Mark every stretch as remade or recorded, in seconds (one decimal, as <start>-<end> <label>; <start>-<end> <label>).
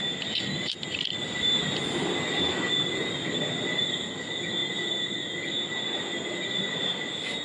0.0-0.7 remade; 0.7-7.4 recorded